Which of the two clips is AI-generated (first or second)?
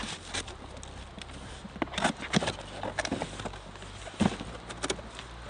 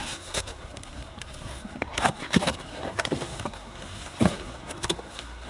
second